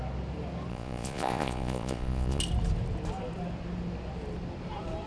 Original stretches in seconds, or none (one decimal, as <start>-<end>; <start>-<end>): 0.0-0.7; 2.4-5.1